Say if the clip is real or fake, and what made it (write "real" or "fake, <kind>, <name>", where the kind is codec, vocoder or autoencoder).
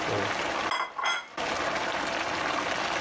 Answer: real